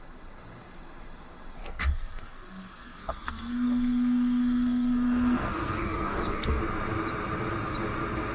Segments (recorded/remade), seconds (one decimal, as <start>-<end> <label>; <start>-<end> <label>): 0.0-1.6 recorded; 1.6-6.6 remade; 6.6-8.3 recorded